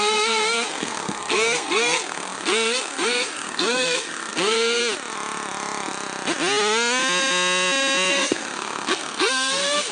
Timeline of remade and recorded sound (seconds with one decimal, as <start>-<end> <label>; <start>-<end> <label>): 0.0-4.8 remade; 4.8-8.1 recorded; 8.1-9.9 remade